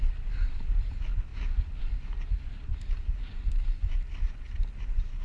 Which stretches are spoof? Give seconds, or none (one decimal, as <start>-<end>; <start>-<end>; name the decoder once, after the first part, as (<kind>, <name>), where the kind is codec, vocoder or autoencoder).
none